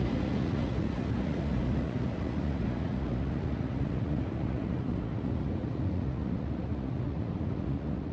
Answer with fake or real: fake